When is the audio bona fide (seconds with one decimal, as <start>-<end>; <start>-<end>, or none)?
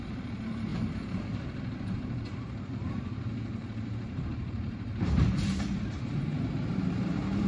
none